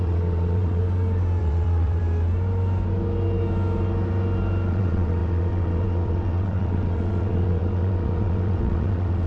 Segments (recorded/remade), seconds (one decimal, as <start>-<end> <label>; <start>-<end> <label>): 0.0-0.8 remade; 0.8-1.4 recorded; 1.4-2.0 remade; 2.0-4.7 recorded; 4.7-9.3 remade